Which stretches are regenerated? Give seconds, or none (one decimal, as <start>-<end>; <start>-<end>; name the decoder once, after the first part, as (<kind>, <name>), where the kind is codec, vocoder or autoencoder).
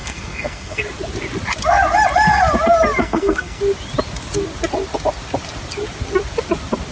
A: 0.0-0.8 (codec, SNAC); 3.0-3.6